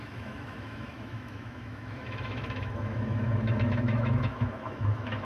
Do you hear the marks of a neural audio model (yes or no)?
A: yes